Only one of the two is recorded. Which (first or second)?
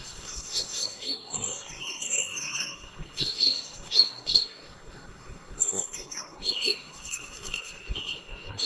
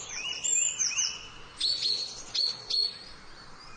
second